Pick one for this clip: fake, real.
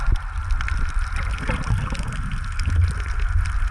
real